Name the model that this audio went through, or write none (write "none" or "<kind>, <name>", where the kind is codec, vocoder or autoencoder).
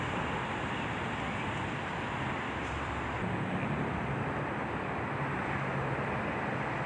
none